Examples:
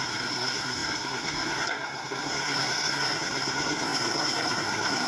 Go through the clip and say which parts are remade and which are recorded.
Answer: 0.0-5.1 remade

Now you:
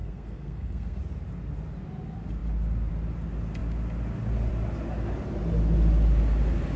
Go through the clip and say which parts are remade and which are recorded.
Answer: 0.0-1.0 remade; 1.0-6.8 recorded